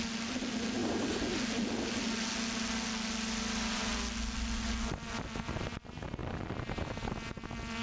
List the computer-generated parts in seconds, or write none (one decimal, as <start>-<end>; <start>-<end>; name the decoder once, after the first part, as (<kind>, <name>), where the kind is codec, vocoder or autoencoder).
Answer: none

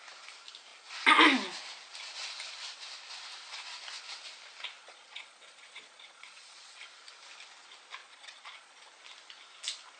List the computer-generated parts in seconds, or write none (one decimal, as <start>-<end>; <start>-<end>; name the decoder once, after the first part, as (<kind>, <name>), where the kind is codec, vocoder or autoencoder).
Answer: 4.8-6.8 (vocoder, Vocos); 8.0-8.9

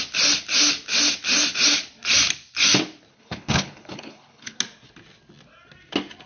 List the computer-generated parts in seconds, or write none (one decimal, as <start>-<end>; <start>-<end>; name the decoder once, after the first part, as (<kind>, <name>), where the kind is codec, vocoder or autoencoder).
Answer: 3.1-4.6 (codec, HILCodec)

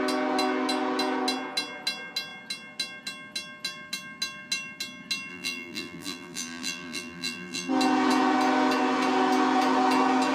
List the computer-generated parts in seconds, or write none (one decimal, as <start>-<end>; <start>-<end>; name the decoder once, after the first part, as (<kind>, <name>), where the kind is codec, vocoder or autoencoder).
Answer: 5.3-7.7 (vocoder, BigVGAN v2)

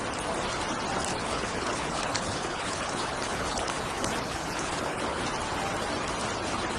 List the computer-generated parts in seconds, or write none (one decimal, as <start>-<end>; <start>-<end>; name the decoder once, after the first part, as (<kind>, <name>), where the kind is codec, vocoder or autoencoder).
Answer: 1.1-5.2 (codec, HILCodec)